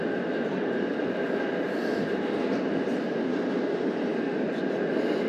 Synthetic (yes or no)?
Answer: no